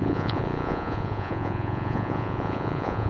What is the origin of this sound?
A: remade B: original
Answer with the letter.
A